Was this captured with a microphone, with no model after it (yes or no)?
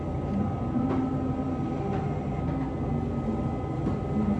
yes